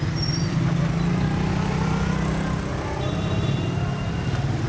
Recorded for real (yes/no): yes